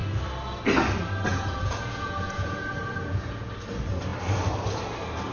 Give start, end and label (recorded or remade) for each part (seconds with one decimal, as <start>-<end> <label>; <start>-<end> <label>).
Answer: 0.0-1.3 recorded; 1.3-3.5 remade; 3.5-5.3 recorded